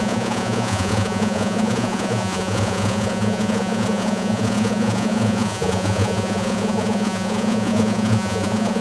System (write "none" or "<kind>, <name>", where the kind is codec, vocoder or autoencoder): vocoder, Vocos